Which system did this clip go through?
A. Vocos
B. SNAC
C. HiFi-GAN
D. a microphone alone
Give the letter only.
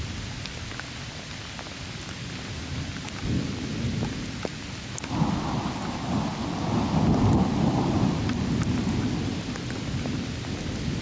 D